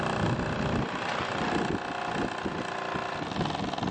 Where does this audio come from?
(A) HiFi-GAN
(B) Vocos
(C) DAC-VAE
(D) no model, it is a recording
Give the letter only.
D